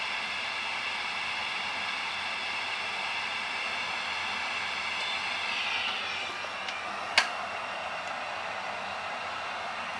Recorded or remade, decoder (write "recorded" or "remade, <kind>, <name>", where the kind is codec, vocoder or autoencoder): recorded